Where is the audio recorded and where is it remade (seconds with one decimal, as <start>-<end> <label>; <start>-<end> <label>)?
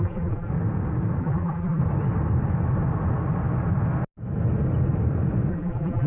0.0-0.5 remade; 0.5-1.2 recorded; 1.2-1.8 remade; 1.8-5.5 recorded; 5.5-6.1 remade